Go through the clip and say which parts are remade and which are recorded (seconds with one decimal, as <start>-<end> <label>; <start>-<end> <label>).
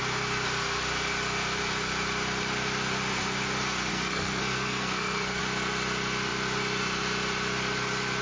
0.0-3.9 recorded; 3.9-5.4 remade; 5.4-8.2 recorded